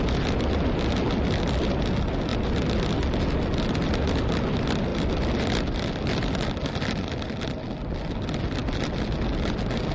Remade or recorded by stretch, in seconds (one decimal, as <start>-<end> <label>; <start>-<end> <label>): 0.0-9.9 recorded